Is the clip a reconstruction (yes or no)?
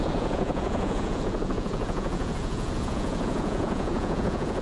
yes